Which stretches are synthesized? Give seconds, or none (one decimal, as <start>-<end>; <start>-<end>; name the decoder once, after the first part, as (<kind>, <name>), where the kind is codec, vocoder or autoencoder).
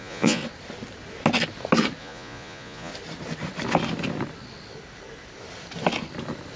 0.0-0.4 (vocoder, Vocos); 2.0-2.9